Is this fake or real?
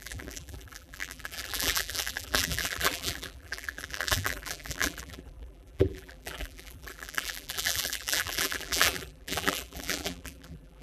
fake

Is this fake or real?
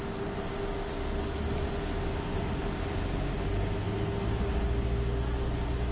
real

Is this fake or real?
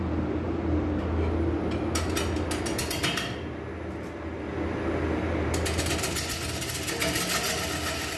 real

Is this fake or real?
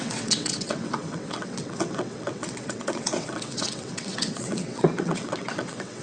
fake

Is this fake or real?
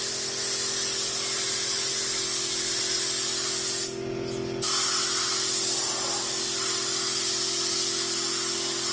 real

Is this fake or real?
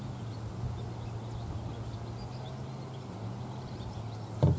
real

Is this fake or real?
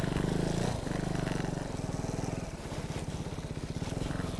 real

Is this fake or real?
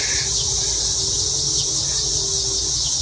real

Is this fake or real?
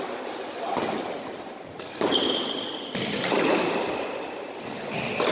real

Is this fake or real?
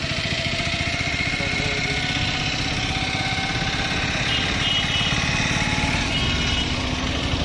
real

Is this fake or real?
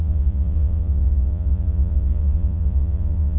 fake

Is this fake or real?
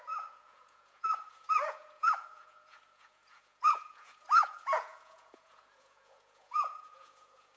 fake